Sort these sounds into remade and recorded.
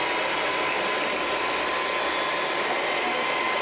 recorded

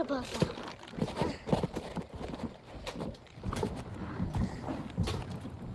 recorded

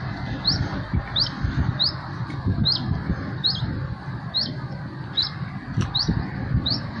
recorded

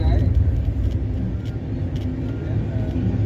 recorded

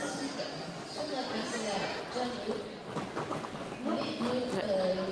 recorded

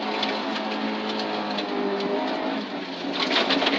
recorded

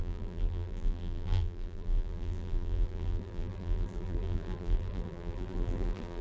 remade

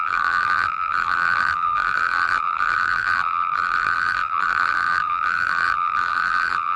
remade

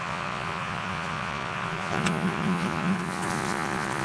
remade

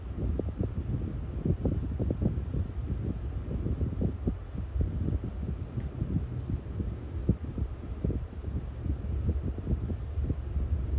recorded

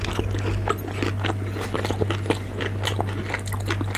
recorded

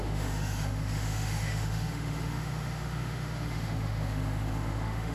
remade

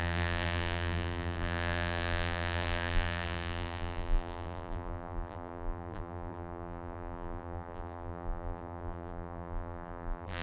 remade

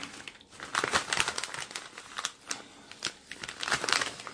recorded